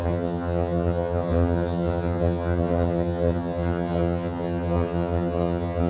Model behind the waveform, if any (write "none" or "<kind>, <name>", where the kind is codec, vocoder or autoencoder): vocoder, HiFi-GAN